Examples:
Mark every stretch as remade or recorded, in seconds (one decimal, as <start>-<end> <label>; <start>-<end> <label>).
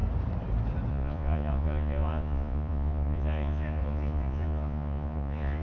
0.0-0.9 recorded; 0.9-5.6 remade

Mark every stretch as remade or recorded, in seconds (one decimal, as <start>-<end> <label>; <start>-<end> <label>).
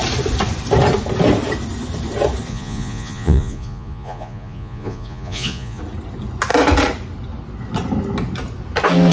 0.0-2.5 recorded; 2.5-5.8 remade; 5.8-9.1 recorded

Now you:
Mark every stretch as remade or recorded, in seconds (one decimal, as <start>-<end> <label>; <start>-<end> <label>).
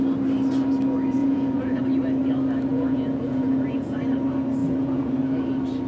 0.0-1.2 recorded; 1.2-1.8 remade; 1.8-2.7 recorded; 2.7-4.0 remade; 4.0-4.6 recorded; 4.6-5.1 remade; 5.1-5.9 recorded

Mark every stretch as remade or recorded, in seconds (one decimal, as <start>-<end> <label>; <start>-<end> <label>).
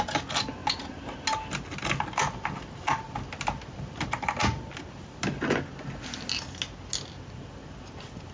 0.0-8.3 recorded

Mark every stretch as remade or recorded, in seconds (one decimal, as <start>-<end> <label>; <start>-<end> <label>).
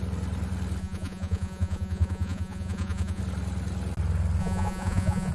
0.0-0.8 recorded; 0.8-3.2 remade; 3.2-4.4 recorded; 4.4-5.3 remade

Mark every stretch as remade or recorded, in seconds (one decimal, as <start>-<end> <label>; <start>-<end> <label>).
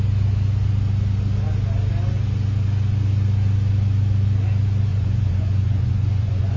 0.0-4.9 recorded; 4.9-6.6 remade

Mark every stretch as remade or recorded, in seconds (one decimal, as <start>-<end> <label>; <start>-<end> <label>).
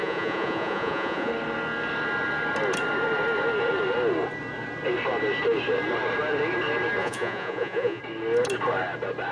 0.0-1.3 remade; 1.3-7.0 recorded; 7.0-8.0 remade; 8.0-9.3 recorded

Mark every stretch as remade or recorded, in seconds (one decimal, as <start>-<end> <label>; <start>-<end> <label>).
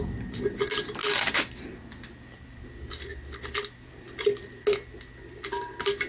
0.0-6.1 recorded